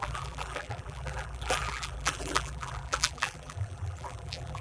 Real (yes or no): no